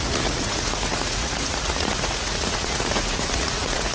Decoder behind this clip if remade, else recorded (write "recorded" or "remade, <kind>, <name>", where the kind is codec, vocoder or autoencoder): remade, vocoder, Vocos